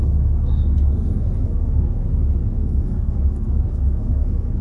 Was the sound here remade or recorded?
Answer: remade